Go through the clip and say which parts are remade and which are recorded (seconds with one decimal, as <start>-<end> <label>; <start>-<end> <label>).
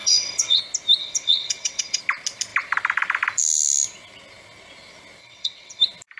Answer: 0.0-0.6 remade; 0.6-1.0 recorded; 1.0-2.0 remade; 2.0-5.2 recorded; 5.2-5.8 remade; 5.8-6.2 recorded